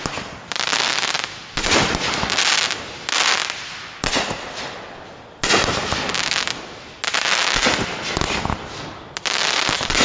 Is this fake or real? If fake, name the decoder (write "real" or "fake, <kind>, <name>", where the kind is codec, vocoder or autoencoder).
real